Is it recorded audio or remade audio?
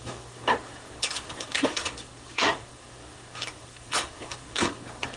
remade